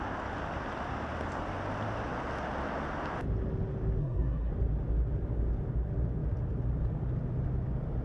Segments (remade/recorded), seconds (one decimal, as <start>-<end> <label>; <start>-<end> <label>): 0.0-4.0 recorded; 4.0-4.5 remade; 4.5-8.0 recorded